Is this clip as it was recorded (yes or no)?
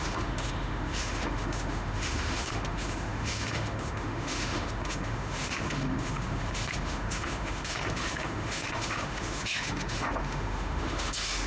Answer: no